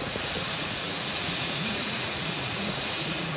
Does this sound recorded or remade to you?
remade